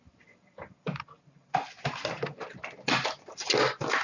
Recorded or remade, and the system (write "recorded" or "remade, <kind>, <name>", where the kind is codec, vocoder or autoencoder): recorded